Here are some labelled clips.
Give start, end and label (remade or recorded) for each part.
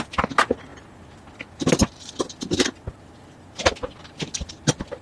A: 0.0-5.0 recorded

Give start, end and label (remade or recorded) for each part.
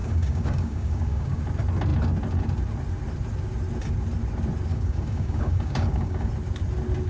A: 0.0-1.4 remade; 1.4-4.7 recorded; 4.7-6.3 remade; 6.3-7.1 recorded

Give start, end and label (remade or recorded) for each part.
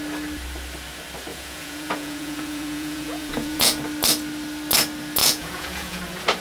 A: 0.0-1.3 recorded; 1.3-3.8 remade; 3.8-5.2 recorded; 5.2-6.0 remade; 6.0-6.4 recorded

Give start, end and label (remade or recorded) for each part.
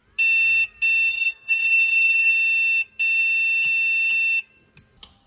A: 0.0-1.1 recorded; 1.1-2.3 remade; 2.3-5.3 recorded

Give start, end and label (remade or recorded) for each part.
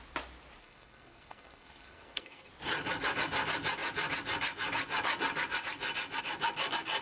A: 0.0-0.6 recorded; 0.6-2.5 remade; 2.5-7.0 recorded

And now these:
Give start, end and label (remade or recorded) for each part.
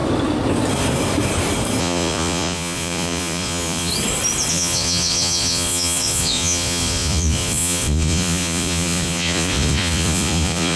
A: 0.0-1.8 recorded; 1.8-3.9 remade; 3.9-4.5 recorded; 4.5-10.8 remade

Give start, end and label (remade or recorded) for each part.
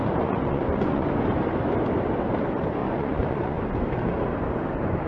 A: 0.0-1.1 remade; 1.1-2.8 recorded; 2.8-3.6 remade; 3.6-5.1 recorded